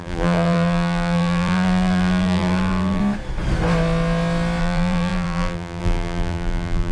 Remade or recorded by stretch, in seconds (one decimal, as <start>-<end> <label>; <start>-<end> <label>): 0.0-3.0 remade; 3.0-4.6 recorded; 4.6-6.9 remade